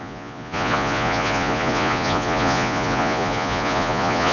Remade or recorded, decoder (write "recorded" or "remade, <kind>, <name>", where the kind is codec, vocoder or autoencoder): remade, vocoder, Vocos